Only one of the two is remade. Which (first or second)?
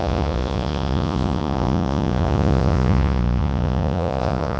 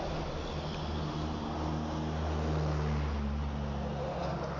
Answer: first